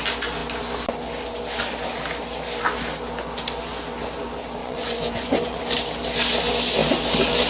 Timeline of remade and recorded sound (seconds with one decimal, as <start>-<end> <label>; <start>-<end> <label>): 0.0-4.6 recorded; 4.6-5.6 remade; 5.6-7.5 recorded